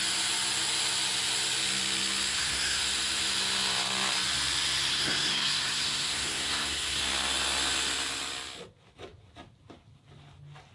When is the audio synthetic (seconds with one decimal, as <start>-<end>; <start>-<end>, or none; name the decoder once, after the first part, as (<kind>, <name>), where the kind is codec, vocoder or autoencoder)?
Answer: 2.3-2.8 (codec, SNAC); 4.9-7.0